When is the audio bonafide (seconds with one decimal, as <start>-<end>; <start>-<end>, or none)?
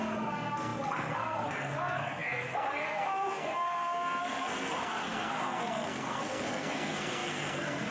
none